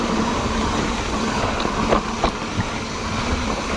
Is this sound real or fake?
real